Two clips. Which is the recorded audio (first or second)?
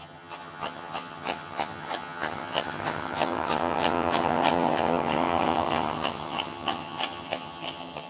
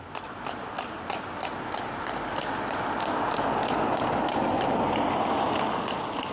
second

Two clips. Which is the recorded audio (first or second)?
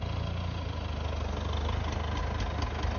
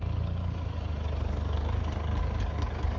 first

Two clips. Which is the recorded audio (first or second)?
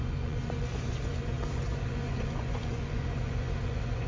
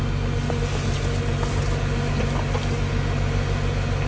second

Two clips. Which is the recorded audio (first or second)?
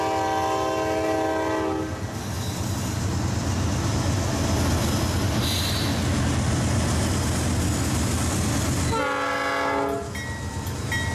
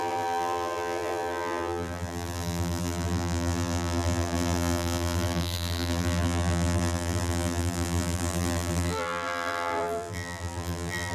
first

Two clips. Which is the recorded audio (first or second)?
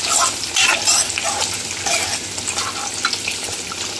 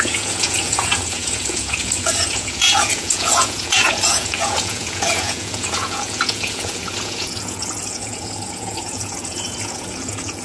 first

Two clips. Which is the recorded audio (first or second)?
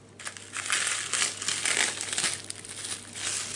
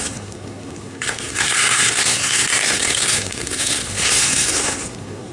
first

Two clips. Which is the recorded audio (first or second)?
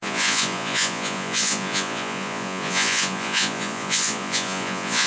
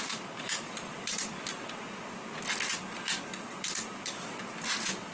second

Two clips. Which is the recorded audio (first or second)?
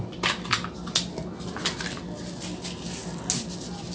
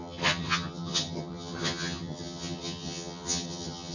first